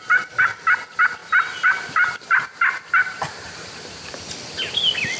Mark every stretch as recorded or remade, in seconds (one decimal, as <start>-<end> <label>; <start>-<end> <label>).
0.0-1.2 recorded; 1.2-4.3 remade; 4.3-5.2 recorded